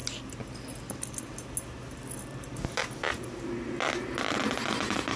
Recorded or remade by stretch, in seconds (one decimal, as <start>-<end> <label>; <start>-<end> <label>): 0.0-5.2 recorded